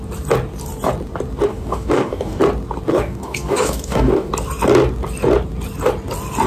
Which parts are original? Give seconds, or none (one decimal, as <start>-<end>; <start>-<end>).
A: 0.0-1.5; 2.4-2.9; 4.3-6.5